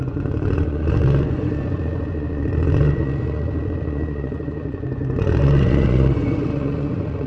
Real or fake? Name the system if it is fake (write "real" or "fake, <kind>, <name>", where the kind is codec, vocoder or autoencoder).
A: fake, vocoder, Vocos